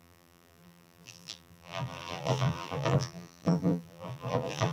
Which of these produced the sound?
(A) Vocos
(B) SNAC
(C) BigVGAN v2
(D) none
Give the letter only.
C